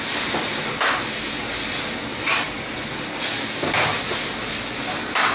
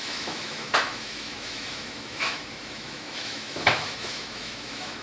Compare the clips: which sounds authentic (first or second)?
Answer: first